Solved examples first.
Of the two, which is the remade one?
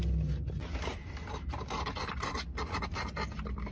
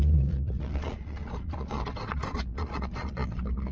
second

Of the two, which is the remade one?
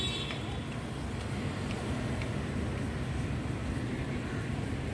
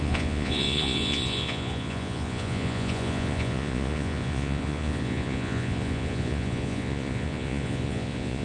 second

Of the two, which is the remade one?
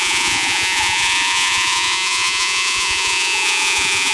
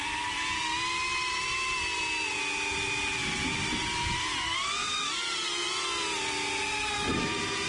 first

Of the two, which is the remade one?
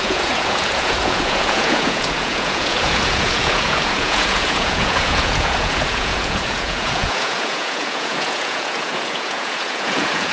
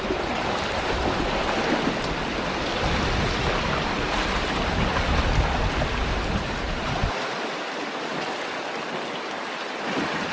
first